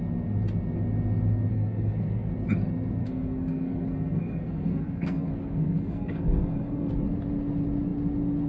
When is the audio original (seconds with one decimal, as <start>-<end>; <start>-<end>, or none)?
0.0-1.5; 2.3-3.0; 6.9-8.5